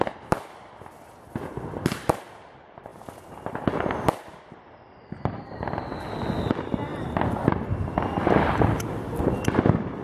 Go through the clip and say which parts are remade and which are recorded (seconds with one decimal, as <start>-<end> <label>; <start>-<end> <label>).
0.0-10.0 recorded